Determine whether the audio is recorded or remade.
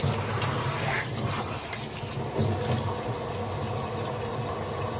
recorded